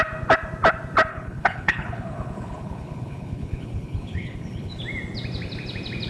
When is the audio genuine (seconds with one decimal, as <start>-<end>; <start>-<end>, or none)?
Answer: 0.0-1.1; 4.8-6.1